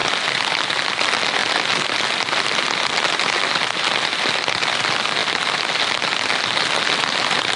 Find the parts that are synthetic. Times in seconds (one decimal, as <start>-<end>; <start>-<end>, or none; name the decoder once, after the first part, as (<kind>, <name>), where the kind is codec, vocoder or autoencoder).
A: none